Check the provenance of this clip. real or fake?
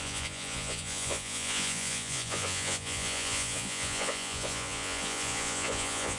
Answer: fake